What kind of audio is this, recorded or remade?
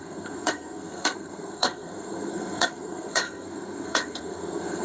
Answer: remade